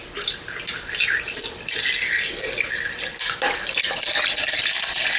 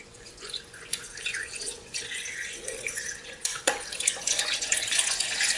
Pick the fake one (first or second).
second